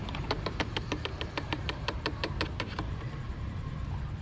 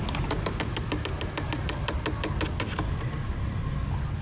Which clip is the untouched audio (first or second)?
second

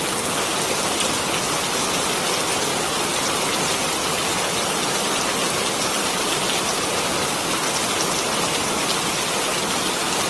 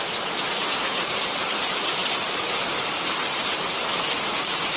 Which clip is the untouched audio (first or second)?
first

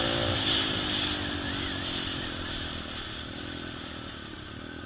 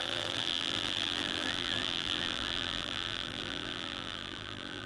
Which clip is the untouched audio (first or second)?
first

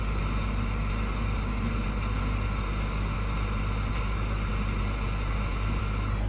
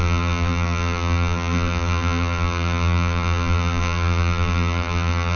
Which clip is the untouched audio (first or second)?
first